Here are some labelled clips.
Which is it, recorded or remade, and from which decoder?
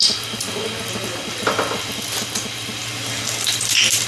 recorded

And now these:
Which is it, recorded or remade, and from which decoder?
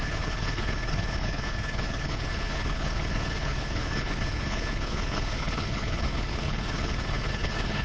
remade, codec, HILCodec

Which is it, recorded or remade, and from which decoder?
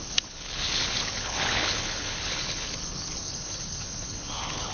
remade, codec, HILCodec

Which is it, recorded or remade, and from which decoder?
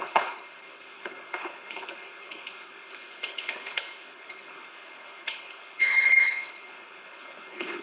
remade, codec, HILCodec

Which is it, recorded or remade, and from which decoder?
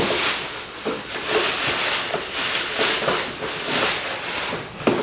recorded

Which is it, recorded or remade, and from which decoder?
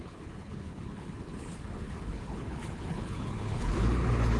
remade, codec, HILCodec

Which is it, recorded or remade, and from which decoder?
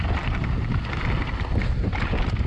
recorded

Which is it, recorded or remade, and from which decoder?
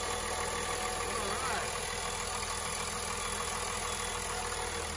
recorded